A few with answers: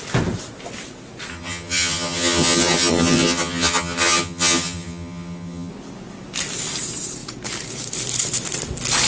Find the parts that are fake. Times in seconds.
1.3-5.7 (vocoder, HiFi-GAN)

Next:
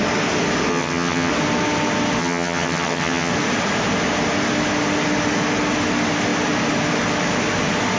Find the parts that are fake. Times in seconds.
0.7-1.3 (vocoder, HiFi-GAN); 2.2-3.3

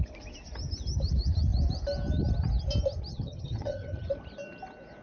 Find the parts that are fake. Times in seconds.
3.1-4.1 (vocoder, HiFi-GAN)

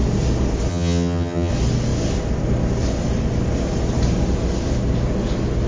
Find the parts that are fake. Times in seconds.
0.7-1.5 (vocoder, HiFi-GAN)

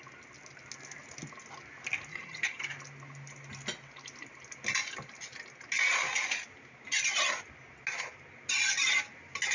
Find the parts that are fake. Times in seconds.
2.1-2.6 (vocoder, HiFi-GAN)

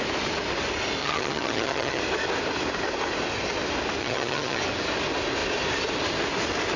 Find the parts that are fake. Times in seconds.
1.0-2.0 (vocoder, HiFi-GAN); 4.0-4.6

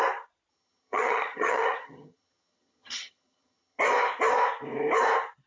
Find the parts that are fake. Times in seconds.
0.5-3.8 (vocoder, HiFi-GAN)

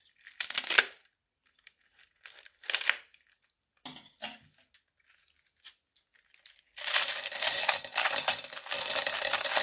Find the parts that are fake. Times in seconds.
none